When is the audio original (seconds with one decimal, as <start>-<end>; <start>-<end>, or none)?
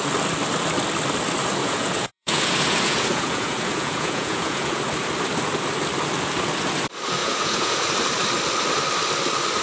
0.0-1.6; 4.8-7.2; 7.9-9.6